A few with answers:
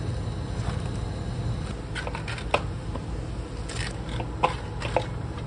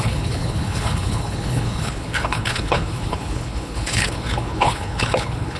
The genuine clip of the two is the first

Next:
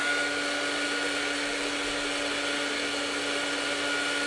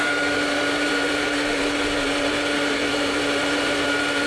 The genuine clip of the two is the first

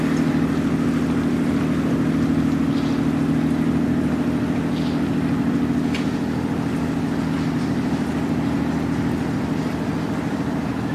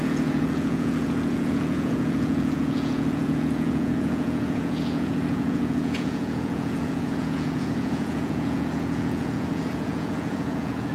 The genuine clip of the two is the first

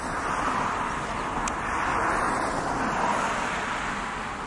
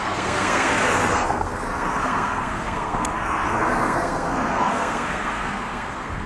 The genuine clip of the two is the first